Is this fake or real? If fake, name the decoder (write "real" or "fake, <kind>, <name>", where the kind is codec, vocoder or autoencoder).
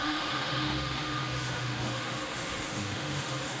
fake, autoencoder, DAC-VAE